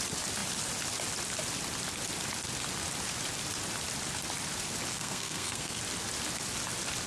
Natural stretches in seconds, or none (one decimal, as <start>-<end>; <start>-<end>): 0.0-4.9; 5.8-7.1

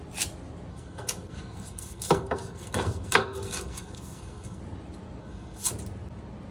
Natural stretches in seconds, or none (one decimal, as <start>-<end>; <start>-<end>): 0.0-0.7; 4.6-5.2; 5.7-6.5

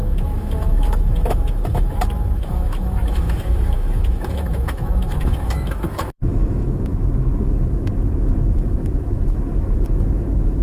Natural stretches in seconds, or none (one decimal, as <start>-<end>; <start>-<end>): none

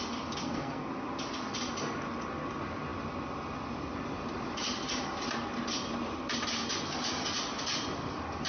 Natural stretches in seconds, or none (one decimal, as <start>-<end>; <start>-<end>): 0.0-0.4; 0.9-8.5

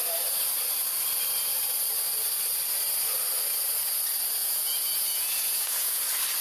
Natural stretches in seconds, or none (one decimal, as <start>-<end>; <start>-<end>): 0.0-4.4; 6.0-6.4

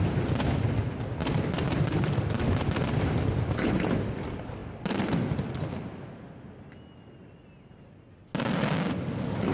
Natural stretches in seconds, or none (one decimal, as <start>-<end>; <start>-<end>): 0.0-9.5